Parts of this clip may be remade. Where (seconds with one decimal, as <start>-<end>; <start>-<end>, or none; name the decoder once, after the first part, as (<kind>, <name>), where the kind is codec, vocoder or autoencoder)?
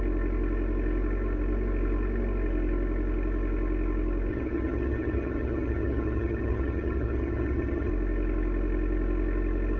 4.3-7.9 (vocoder, HiFi-GAN)